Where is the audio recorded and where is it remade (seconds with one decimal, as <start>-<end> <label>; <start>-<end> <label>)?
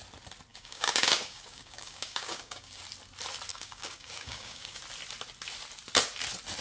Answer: 0.0-0.5 recorded; 0.5-2.8 remade; 2.8-3.5 recorded; 3.5-4.8 remade; 4.8-6.6 recorded